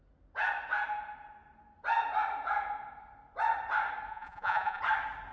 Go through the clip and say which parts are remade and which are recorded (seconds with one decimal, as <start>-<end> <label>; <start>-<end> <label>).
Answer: 0.0-4.1 recorded; 4.1-4.8 remade; 4.8-5.3 recorded